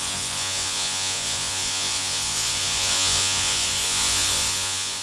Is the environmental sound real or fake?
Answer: fake